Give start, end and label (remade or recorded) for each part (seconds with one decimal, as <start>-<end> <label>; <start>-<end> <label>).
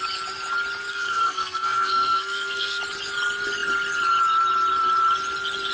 0.0-0.9 recorded; 0.9-2.8 remade; 2.8-5.7 recorded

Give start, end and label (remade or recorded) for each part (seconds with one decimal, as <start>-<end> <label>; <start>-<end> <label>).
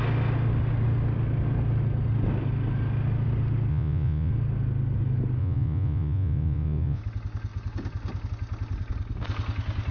0.0-3.7 recorded; 3.7-4.3 remade; 4.3-5.4 recorded; 5.4-7.0 remade; 7.0-9.9 recorded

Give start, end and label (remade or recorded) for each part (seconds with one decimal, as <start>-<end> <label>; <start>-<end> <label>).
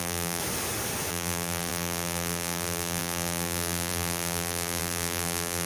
0.0-0.4 remade; 0.4-1.1 recorded; 1.1-5.7 remade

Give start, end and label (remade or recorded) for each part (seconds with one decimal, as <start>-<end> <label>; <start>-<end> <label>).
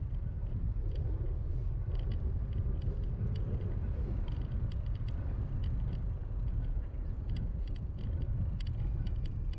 0.0-6.2 recorded; 6.2-8.0 remade; 8.0-9.6 recorded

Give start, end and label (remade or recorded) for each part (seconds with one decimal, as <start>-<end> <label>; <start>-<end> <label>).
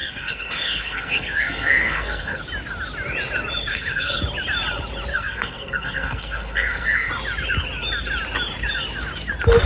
0.0-2.4 remade; 2.4-3.7 recorded; 3.7-4.2 remade; 4.2-5.1 recorded; 5.1-7.1 remade; 7.1-9.7 recorded